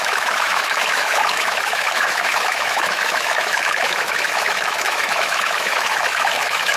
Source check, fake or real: fake